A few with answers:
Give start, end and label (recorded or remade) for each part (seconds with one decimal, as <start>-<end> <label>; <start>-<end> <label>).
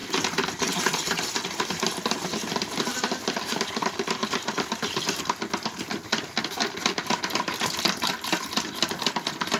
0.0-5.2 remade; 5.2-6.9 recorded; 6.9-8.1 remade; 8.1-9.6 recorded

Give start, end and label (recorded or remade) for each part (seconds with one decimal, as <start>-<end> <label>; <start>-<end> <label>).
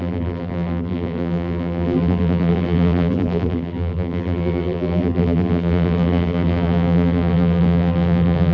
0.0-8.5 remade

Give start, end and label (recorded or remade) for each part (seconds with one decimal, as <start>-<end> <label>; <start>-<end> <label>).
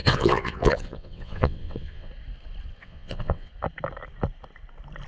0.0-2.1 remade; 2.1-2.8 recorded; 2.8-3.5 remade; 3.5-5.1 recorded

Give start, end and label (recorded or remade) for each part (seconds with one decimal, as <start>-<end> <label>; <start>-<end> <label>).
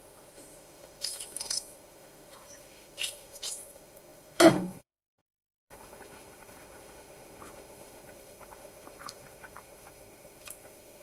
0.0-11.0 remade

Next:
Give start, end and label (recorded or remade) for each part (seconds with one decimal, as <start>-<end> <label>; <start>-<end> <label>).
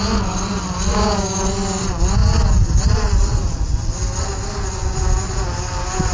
0.0-0.9 recorded; 0.9-1.4 remade; 1.4-6.1 recorded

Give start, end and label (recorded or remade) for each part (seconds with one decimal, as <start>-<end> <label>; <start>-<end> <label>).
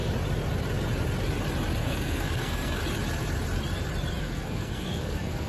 0.0-1.8 recorded; 1.8-2.8 remade; 2.8-4.2 recorded; 4.2-5.5 remade